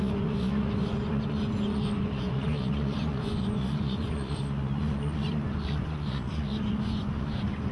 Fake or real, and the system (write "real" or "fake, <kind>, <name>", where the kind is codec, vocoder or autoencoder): fake, vocoder, Vocos